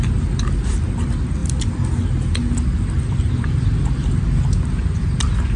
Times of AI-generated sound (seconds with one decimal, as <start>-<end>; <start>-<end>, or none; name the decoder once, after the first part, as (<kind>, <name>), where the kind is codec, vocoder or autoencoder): none